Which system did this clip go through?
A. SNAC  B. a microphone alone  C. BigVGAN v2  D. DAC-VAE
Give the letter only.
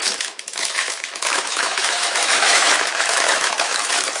D